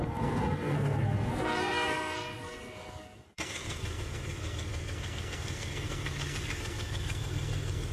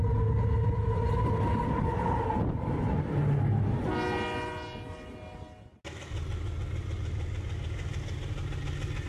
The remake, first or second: first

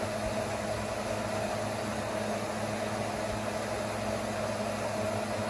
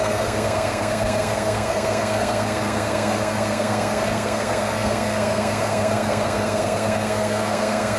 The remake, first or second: second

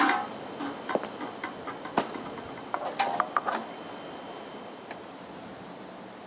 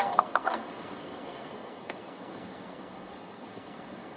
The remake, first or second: second